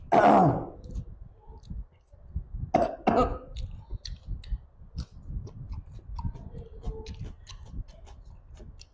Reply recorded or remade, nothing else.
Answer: recorded